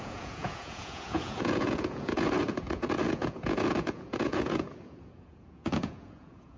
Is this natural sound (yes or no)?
no